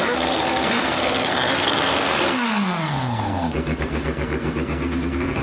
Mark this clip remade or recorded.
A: remade